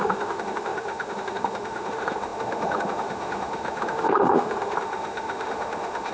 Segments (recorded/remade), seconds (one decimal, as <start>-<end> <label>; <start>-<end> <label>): 0.0-6.1 remade